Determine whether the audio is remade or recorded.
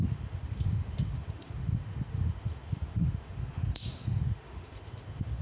remade